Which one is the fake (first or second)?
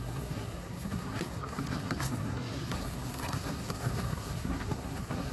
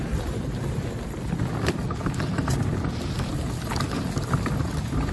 first